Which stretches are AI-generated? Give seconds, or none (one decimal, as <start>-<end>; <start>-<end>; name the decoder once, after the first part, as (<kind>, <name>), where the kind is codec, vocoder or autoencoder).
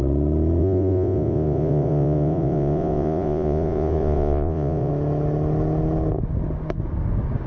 0.6-4.9 (vocoder, Vocos)